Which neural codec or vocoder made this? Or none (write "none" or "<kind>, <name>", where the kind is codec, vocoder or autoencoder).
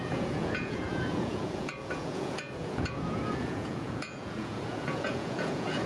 vocoder, Vocos